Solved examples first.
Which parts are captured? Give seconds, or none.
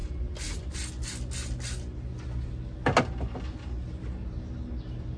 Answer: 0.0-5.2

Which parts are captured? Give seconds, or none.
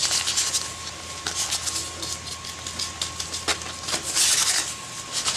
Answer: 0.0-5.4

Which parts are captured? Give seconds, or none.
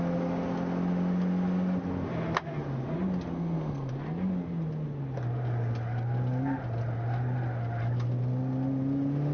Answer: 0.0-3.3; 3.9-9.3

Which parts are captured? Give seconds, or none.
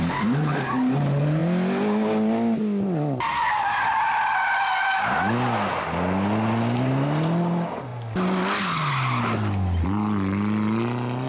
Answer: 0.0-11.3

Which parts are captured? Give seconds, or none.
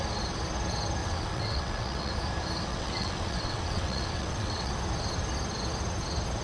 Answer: 0.0-1.0; 2.1-2.7; 4.7-6.4